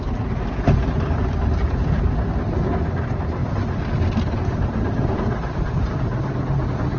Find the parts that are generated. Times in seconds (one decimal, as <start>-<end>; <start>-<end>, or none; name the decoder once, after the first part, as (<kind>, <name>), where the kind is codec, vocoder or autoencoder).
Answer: 3.4-7.0 (vocoder, BigVGAN v2)